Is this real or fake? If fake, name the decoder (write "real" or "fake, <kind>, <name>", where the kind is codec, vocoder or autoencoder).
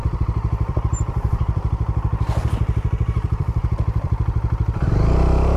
fake, vocoder, BigVGAN v2